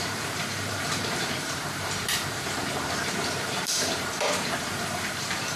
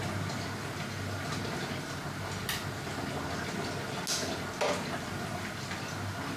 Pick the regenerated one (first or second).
first